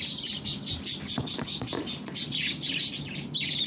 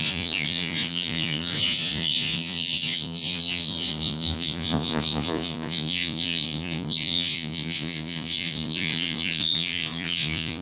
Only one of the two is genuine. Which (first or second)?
first